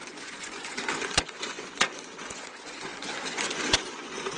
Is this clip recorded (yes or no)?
no